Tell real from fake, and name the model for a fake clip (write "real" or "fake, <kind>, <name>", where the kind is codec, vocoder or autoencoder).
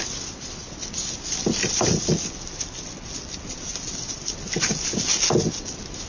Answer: real